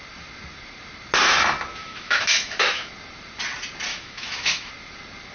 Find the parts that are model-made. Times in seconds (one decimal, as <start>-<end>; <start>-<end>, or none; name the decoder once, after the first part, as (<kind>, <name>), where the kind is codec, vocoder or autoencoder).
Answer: 1.8-2.9 (autoencoder, DAC-VAE); 3.9-4.7